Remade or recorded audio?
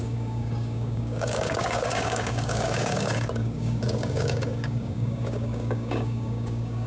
remade